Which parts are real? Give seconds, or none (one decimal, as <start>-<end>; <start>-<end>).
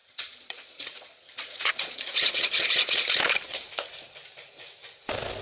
3.2-5.4